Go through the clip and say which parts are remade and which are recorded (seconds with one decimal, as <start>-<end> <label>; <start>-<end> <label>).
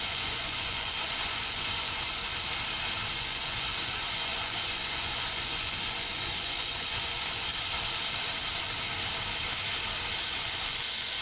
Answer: 0.0-2.2 remade; 2.2-3.1 recorded; 3.1-7.5 remade; 7.5-10.3 recorded; 10.3-11.2 remade